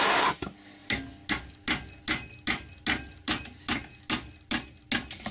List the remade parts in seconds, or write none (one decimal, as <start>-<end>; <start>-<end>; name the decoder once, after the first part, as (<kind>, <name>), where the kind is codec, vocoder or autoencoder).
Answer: none